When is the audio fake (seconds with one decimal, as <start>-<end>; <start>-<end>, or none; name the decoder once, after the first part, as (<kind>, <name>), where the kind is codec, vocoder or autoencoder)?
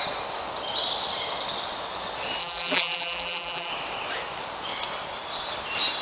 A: 2.4-3.7 (vocoder, BigVGAN v2)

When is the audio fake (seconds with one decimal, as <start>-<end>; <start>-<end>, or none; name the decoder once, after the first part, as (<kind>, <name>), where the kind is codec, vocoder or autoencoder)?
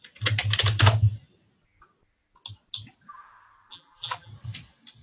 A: 3.7-4.3 (vocoder, BigVGAN v2)